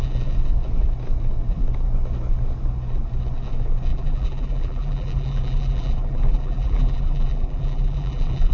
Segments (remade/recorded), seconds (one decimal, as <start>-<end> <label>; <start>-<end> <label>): 0.0-3.9 recorded; 3.9-8.5 remade